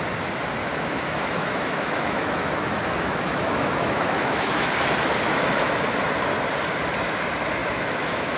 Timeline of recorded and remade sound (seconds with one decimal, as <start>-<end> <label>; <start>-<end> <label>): 0.0-0.6 recorded; 0.6-4.7 remade; 4.7-7.6 recorded; 7.6-8.4 remade

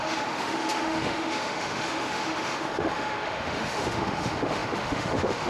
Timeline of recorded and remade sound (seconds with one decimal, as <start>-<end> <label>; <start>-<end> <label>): 0.0-5.5 remade

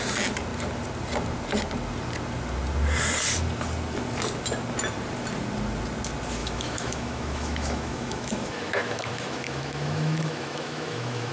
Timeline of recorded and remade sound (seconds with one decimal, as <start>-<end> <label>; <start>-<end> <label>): 0.0-6.4 recorded; 6.4-11.3 remade

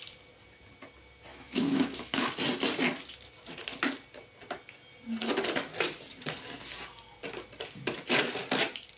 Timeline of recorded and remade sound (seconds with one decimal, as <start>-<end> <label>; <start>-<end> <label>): 0.0-1.3 recorded; 1.3-2.3 remade; 2.3-9.0 recorded

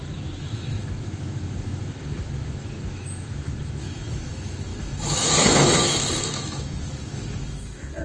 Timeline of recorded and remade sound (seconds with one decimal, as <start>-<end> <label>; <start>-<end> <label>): 0.0-8.0 remade

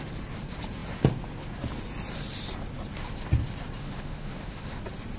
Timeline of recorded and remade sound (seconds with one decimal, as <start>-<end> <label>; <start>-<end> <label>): 0.0-3.8 recorded; 3.8-4.8 remade; 4.8-5.2 recorded

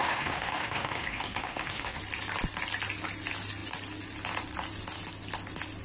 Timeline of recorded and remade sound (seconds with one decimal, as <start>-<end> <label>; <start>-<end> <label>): 0.0-2.0 remade; 2.0-5.8 recorded

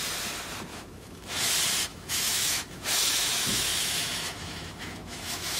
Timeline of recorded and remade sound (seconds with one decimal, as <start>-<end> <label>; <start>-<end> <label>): 0.0-0.7 recorded; 0.7-1.5 remade; 1.5-1.9 recorded; 1.9-5.6 remade